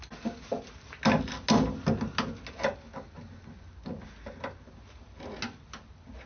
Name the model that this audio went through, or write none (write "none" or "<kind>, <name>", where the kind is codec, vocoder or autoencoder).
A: none